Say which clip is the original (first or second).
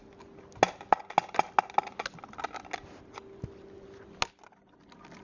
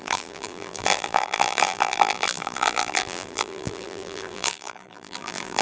first